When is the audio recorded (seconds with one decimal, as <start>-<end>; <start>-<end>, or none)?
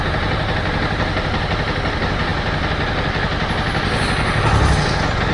0.0-5.3